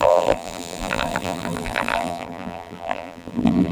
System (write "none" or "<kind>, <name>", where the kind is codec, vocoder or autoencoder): vocoder, BigVGAN v2